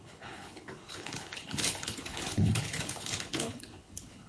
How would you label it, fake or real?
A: fake